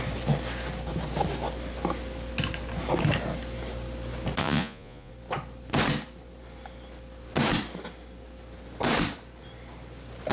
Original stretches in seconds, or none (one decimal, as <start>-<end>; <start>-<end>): 0.0-4.4; 5.1-10.3